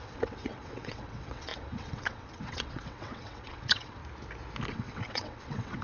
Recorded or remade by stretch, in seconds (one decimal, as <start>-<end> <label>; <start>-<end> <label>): 0.0-4.0 remade; 4.0-4.7 recorded; 4.7-5.8 remade